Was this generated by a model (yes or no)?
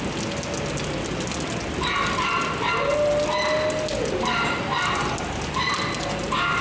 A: no